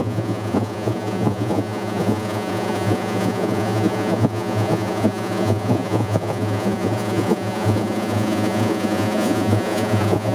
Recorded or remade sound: remade